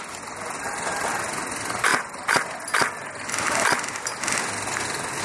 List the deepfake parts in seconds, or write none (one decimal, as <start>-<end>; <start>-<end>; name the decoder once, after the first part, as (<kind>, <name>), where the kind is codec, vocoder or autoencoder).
none